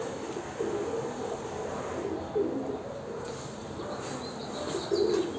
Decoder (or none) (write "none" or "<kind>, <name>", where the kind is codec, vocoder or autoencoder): none